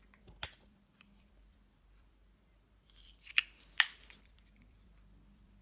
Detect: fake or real fake